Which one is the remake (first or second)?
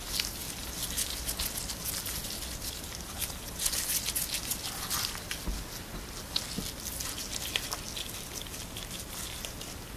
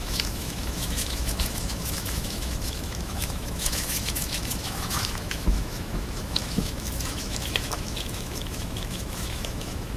second